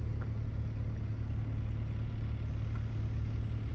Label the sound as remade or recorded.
recorded